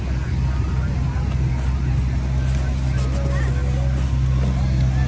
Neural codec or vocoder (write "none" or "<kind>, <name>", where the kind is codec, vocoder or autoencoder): none